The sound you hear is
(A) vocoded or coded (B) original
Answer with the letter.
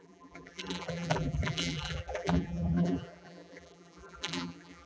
A